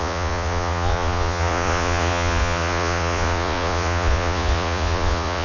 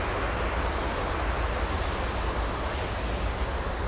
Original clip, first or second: second